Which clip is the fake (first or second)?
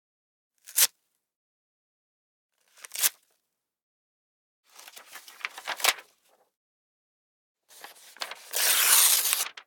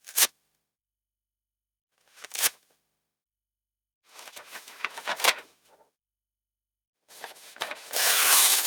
second